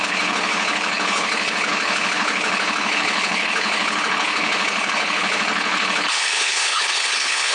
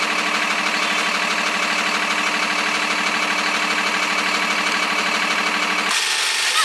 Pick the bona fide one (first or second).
second